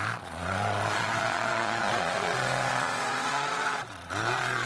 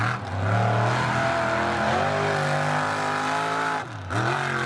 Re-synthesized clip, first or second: first